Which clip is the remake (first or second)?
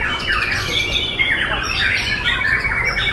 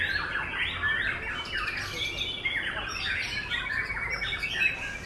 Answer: first